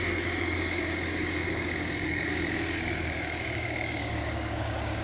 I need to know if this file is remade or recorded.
remade